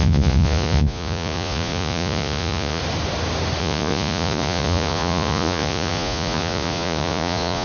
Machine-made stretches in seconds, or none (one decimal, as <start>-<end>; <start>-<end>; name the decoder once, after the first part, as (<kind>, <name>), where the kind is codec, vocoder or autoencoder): 0.0-2.8 (vocoder, Vocos); 3.6-7.6